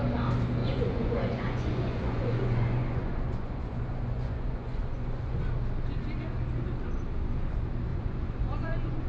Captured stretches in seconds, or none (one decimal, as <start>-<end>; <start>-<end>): 0.0-0.6; 5.4-7.9